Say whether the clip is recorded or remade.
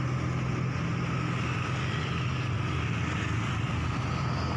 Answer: recorded